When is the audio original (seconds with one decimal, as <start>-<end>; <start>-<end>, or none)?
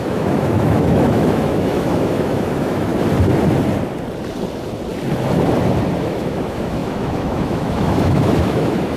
2.9-6.0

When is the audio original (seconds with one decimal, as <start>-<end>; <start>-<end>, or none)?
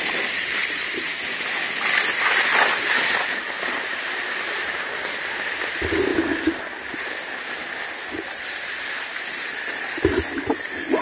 1.1-2.3; 6.1-8.3